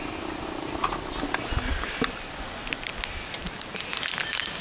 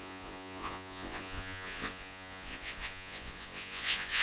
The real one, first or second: first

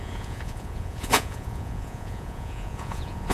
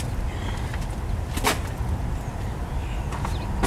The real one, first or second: second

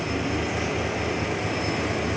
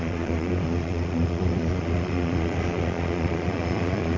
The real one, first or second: first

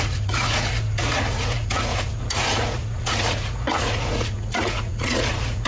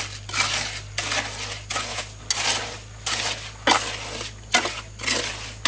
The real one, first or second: second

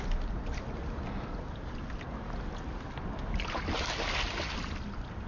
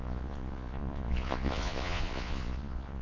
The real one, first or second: first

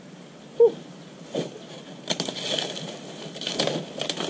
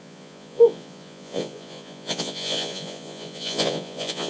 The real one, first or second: first